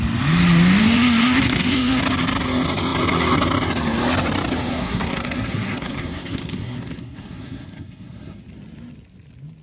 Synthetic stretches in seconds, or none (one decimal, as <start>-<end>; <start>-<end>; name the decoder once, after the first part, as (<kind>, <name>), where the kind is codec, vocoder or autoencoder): 0.8-2.0 (codec, SNAC); 4.7-8.4